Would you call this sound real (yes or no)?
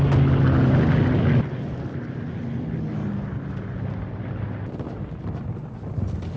yes